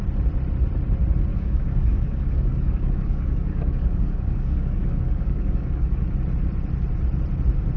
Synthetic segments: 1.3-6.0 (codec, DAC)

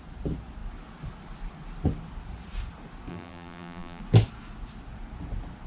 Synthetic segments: 3.1-4.0 (vocoder, BigVGAN v2)

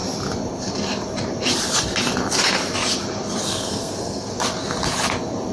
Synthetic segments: 3.4-4.3 (codec, SNAC)

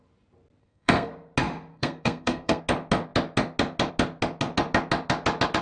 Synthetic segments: 0.6-1.1 (codec, SNAC); 1.7-2.6